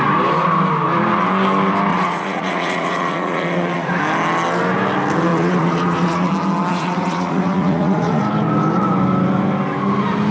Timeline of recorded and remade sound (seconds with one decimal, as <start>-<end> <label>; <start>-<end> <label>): 0.0-1.9 recorded; 1.9-4.0 remade; 4.0-5.3 recorded; 5.3-6.3 remade; 6.3-6.7 recorded; 6.7-8.2 remade; 8.2-10.3 recorded